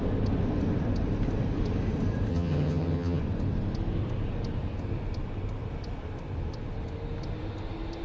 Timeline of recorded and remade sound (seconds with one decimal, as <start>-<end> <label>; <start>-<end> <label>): 0.0-2.3 recorded; 2.3-3.2 remade; 3.2-8.0 recorded